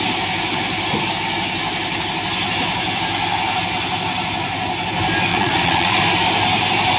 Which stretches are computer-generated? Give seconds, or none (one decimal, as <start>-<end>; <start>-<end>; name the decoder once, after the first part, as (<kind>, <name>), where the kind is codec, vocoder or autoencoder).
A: 5.3-6.0 (vocoder, Vocos)